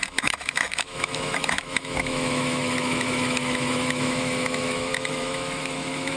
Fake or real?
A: fake